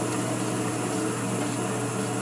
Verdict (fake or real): real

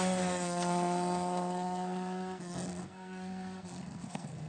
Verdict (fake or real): fake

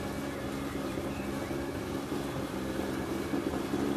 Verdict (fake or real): real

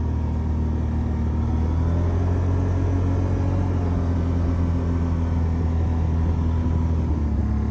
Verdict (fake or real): real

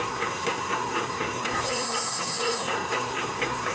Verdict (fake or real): fake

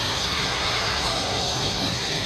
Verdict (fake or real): fake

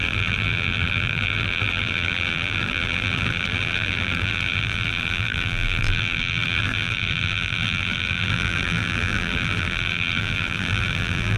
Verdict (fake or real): fake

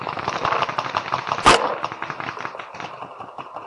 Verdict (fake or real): real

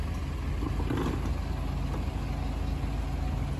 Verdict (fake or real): real